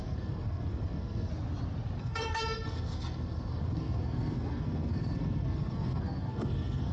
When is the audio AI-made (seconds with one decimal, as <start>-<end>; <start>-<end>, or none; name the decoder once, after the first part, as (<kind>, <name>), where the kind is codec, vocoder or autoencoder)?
0.0-1.3 (codec, SNAC); 2.0-6.9